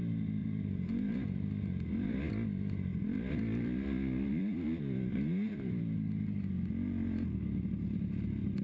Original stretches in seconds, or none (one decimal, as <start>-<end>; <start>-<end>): 0.0-0.4; 2.3-2.9; 6.5-8.6